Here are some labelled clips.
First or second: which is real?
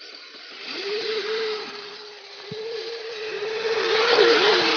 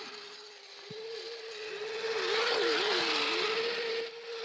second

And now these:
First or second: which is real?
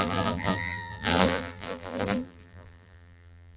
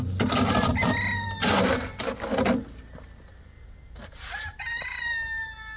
second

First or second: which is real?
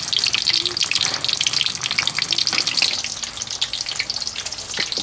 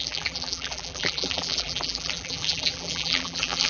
first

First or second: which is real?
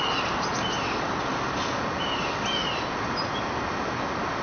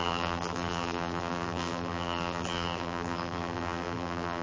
first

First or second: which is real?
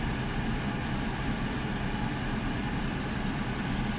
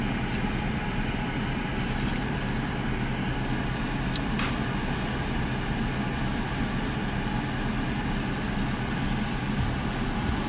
second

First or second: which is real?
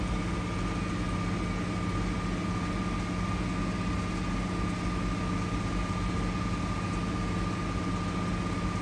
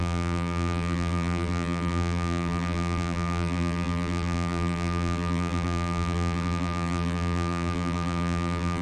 first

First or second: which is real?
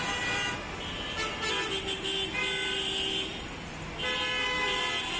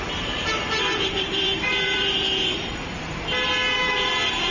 first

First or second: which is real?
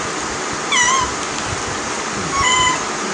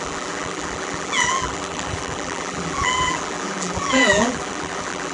first